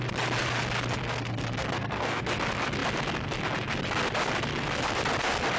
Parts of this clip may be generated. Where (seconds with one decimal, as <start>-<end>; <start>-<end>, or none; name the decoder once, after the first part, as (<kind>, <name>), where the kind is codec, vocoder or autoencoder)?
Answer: 1.0-2.2 (codec, SNAC)